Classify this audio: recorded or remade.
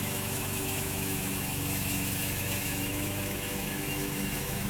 remade